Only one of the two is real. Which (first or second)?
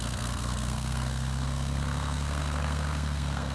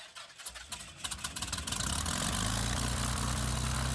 second